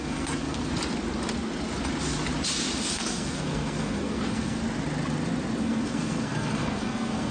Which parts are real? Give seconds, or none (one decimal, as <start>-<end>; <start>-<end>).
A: 0.7-2.8; 4.6-5.6